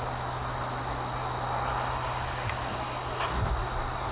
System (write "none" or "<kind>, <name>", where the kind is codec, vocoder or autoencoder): none